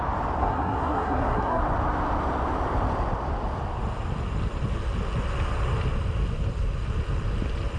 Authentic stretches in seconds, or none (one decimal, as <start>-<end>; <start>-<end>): 0.0-0.4; 1.6-7.8